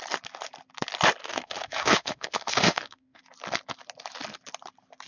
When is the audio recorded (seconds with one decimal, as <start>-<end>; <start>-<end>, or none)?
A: 0.0-1.2; 3.2-5.1